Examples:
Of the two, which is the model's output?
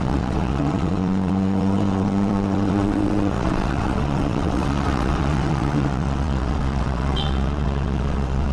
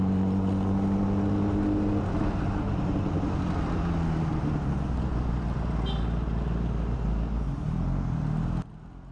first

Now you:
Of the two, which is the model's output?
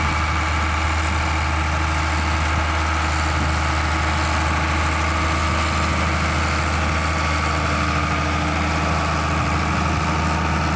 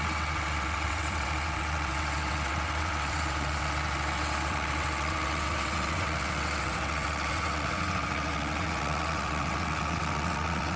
second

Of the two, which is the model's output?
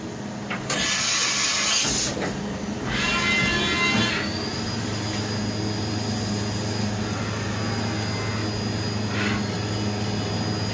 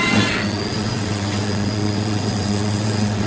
second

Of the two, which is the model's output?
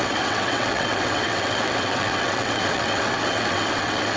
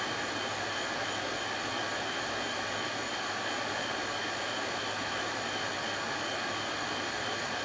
first